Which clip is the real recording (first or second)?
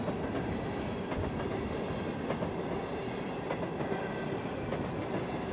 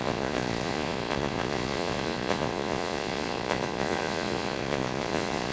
first